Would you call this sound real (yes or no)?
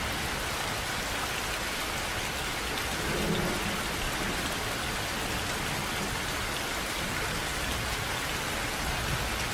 yes